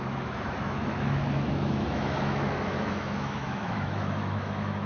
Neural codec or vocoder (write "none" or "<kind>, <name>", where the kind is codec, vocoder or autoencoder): autoencoder, DAC-VAE